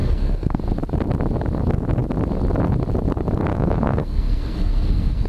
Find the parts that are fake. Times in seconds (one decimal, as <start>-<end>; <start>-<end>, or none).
0.0-0.6; 3.5-5.3